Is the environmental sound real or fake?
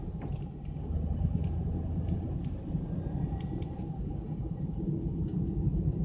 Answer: real